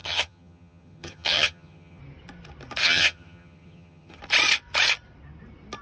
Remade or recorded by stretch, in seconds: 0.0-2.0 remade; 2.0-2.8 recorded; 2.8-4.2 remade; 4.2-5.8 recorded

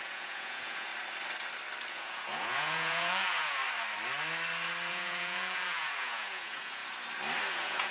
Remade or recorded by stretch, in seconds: 0.0-0.9 remade; 0.9-1.9 recorded; 1.9-3.6 remade; 3.6-4.9 recorded; 4.9-6.8 remade; 6.8-7.5 recorded; 7.5-7.9 remade

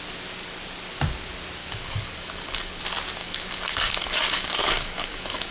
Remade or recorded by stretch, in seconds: 0.0-1.6 recorded; 1.6-2.8 remade; 2.8-3.2 recorded; 3.2-5.5 remade

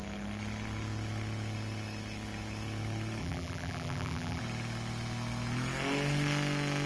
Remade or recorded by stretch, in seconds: 0.0-3.2 recorded; 3.2-4.4 remade; 4.4-6.9 recorded